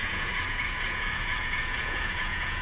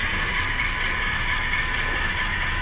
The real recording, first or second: second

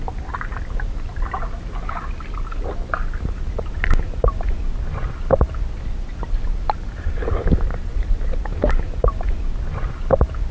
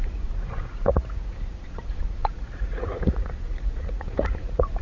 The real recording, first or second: first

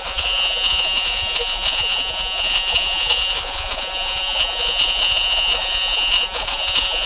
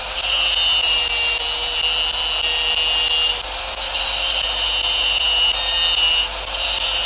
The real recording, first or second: second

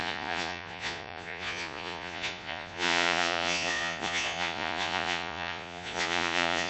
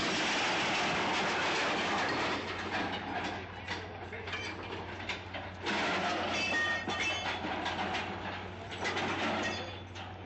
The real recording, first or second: second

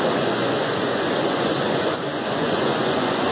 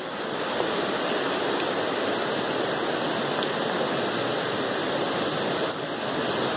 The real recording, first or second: second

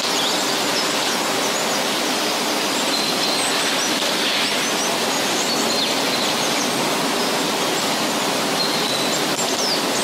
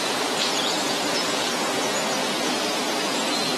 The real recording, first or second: first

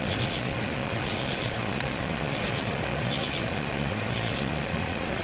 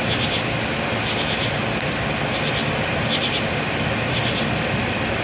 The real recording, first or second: second